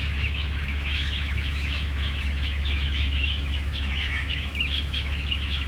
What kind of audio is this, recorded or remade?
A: remade